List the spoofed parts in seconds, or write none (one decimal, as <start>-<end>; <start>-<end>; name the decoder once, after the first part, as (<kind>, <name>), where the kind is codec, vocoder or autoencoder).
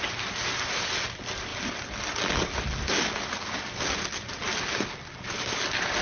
none